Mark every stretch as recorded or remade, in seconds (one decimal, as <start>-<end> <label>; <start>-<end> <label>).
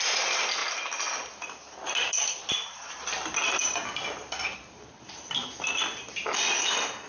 0.0-7.1 recorded